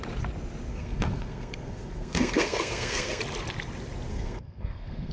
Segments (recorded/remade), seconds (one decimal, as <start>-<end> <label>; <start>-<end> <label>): 0.0-0.7 recorded; 0.7-3.2 remade; 3.2-4.1 recorded; 4.1-5.1 remade